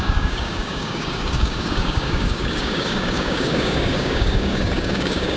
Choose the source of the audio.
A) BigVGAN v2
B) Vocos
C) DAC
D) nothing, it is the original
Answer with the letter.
C